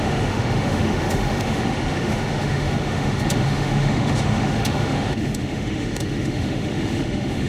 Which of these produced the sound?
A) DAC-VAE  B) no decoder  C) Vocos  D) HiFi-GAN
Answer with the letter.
A